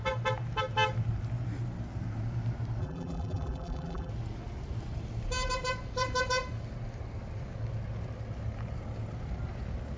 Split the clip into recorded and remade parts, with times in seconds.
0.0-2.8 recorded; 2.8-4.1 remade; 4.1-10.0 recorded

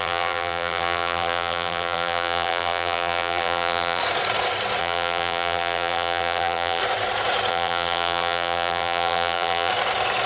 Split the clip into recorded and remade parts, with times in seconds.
0.0-4.0 remade; 4.0-4.8 recorded; 4.8-6.8 remade; 6.8-7.5 recorded; 7.5-9.7 remade; 9.7-10.3 recorded

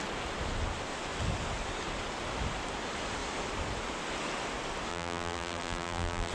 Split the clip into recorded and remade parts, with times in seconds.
0.0-4.9 recorded; 4.9-6.3 remade

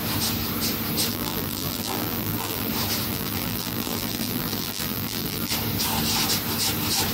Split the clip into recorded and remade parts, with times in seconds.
0.0-1.1 recorded; 1.1-2.7 remade; 2.7-3.1 recorded; 3.1-5.5 remade; 5.5-7.1 recorded

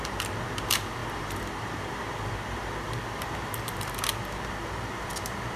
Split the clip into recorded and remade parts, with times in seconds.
0.0-5.6 recorded

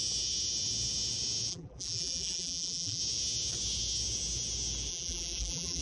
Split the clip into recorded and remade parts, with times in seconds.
0.0-1.5 recorded; 1.5-3.0 remade; 3.0-4.9 recorded; 4.9-5.8 remade

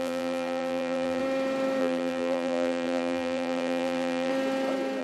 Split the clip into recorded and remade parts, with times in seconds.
0.0-1.2 remade; 1.2-1.8 recorded; 1.8-4.3 remade; 4.3-5.0 recorded

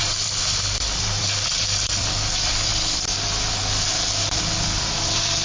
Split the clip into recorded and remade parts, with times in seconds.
0.0-2.7 remade; 2.7-4.5 recorded; 4.5-5.4 remade